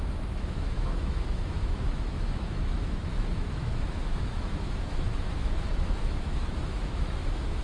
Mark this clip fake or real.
fake